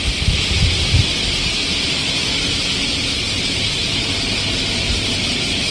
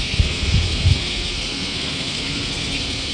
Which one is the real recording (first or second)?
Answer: first